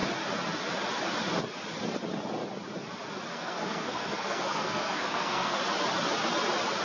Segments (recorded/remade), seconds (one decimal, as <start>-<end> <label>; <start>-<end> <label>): 0.0-3.3 recorded; 3.3-5.6 remade; 5.6-6.8 recorded